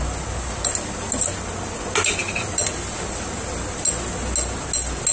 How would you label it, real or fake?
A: real